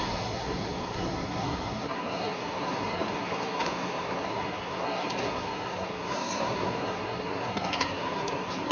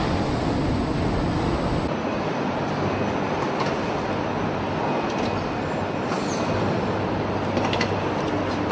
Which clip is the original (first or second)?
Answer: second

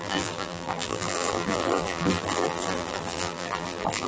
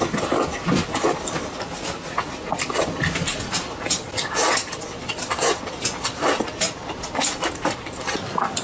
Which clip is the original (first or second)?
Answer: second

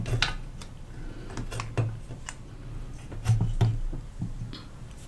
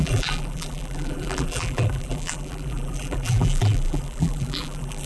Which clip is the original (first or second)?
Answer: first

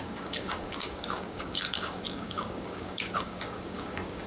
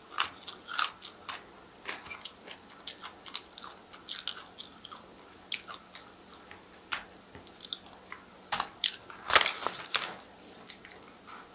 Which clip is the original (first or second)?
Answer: second